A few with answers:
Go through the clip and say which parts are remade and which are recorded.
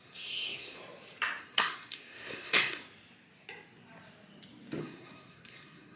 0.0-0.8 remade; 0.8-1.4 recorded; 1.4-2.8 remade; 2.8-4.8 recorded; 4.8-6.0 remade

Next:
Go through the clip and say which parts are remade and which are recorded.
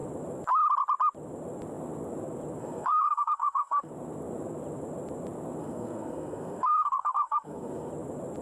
0.0-2.6 recorded; 2.6-3.9 remade; 3.9-5.6 recorded; 5.6-7.9 remade; 7.9-8.4 recorded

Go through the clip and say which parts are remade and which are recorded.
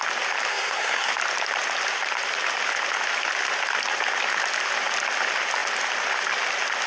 0.0-0.5 recorded; 0.5-1.1 remade; 1.1-6.9 recorded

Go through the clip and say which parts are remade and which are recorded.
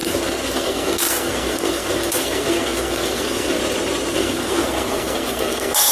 0.0-3.6 remade; 3.6-4.1 recorded; 4.1-5.9 remade